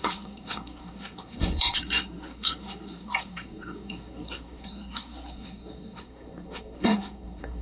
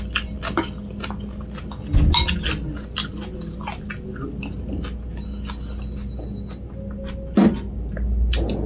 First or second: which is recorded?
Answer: second